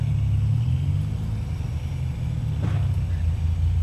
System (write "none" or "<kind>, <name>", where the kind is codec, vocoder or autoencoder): none